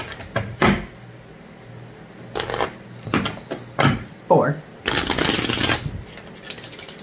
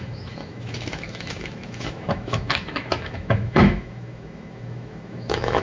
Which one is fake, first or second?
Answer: second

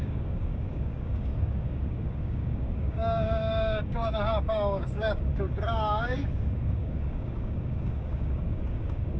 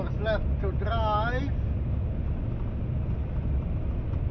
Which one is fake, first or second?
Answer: first